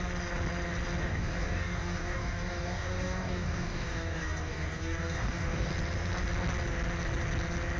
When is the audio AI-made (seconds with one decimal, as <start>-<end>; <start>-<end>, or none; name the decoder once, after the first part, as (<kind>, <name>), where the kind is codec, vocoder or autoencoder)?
1.0-5.7 (codec, DAC)